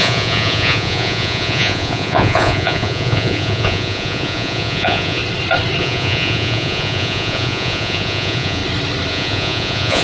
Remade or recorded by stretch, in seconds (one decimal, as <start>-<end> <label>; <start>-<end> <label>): 0.0-5.2 remade; 5.2-5.8 recorded; 5.8-8.6 remade; 8.6-9.1 recorded; 9.1-10.0 remade